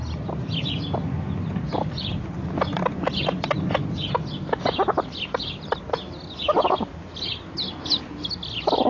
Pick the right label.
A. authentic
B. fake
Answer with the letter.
A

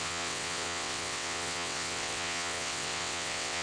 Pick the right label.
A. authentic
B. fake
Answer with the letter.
B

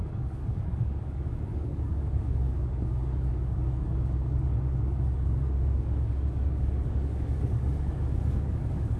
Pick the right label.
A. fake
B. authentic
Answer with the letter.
A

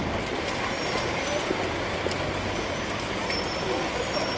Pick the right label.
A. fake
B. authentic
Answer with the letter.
B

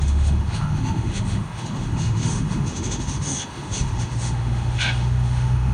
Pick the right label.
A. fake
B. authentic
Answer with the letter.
A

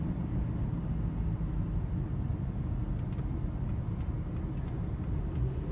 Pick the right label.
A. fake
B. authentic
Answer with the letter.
B